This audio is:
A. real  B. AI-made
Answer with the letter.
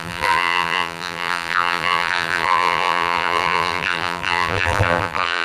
B